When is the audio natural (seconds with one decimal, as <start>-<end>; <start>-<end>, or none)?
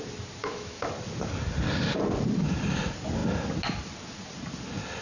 0.0-0.4; 0.9-5.0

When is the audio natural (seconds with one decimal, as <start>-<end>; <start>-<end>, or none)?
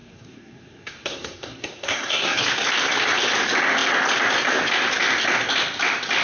2.4-6.2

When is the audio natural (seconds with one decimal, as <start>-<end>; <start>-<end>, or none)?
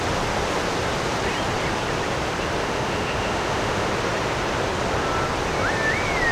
0.0-2.6; 3.9-6.3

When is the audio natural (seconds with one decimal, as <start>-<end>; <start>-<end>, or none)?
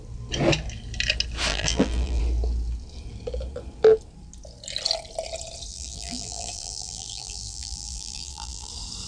0.0-1.5; 2.2-5.7; 8.7-9.1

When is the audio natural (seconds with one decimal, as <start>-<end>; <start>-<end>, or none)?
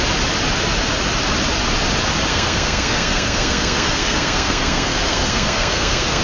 0.0-2.3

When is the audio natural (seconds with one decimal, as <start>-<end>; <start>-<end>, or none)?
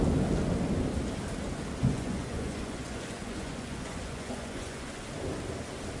0.0-1.8; 5.0-6.0